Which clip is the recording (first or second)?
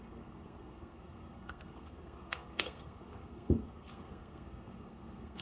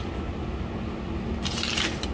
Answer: second